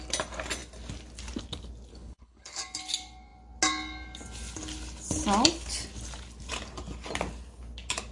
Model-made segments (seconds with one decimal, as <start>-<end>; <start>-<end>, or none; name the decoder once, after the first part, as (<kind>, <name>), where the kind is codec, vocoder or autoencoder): 1.9-2.6 (codec, HILCodec)